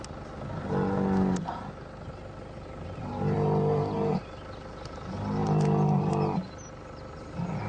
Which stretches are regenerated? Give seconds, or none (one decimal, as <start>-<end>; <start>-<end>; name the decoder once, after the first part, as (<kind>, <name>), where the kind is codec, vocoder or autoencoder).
none